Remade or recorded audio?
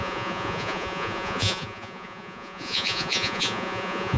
remade